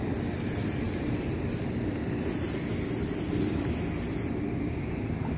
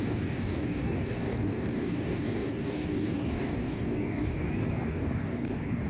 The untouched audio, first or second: first